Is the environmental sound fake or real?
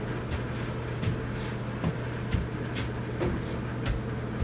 real